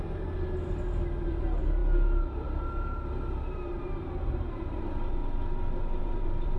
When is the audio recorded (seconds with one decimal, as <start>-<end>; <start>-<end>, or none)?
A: 1.8-4.5; 5.2-6.0